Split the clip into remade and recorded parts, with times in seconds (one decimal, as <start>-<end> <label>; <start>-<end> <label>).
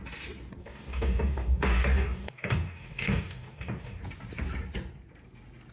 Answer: 0.0-0.6 recorded; 0.6-4.0 remade; 4.0-5.7 recorded